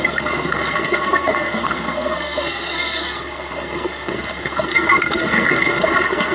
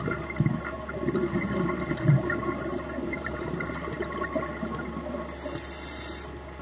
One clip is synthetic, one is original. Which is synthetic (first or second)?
first